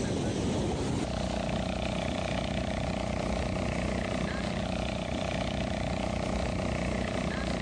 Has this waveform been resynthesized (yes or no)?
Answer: no